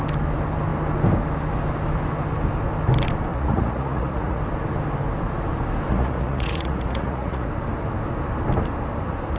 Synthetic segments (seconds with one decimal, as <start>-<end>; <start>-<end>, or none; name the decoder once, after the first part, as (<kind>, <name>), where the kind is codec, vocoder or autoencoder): 3.3-4.4 (vocoder, Vocos); 5.9-7.5